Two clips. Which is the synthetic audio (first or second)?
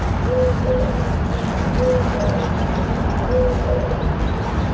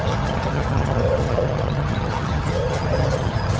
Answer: second